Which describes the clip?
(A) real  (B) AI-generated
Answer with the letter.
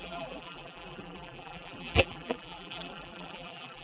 B